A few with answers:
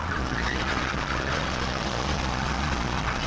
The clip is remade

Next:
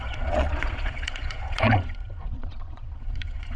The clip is remade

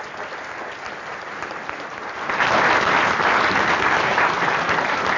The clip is recorded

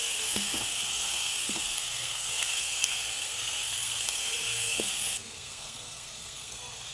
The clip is remade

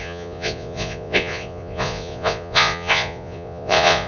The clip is remade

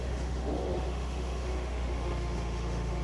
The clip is remade